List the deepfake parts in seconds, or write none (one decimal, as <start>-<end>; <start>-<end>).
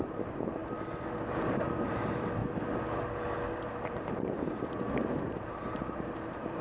0.0-0.6; 1.3-2.4; 3.8-6.6